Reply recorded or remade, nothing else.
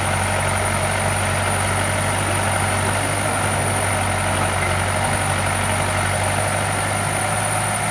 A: recorded